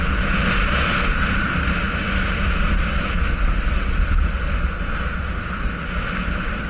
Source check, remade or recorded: recorded